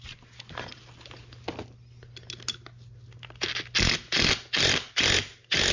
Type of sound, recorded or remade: recorded